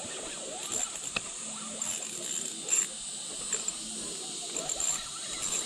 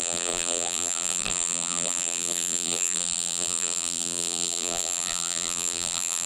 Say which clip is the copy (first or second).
second